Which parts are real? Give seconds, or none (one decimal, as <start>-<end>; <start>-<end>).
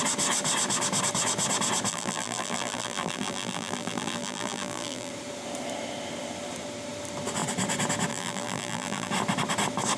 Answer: 0.0-1.9; 5.1-8.1; 9.1-10.0